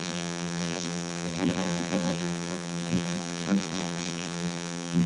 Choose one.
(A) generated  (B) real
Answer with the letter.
A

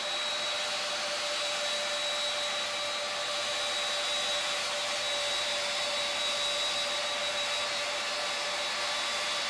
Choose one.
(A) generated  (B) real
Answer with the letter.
B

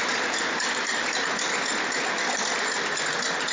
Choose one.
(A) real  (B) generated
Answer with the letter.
A